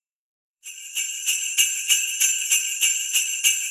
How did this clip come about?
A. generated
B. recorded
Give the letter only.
A